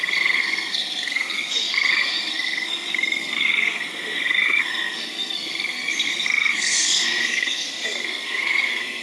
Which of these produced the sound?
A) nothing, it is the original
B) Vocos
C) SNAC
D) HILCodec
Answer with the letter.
C